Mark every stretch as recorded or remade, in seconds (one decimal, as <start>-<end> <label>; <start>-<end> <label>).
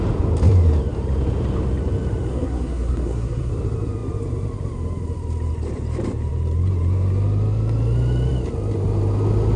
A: 0.0-2.3 recorded; 2.3-3.5 remade; 3.5-9.6 recorded